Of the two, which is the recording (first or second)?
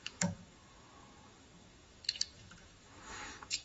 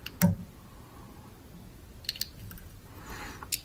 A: second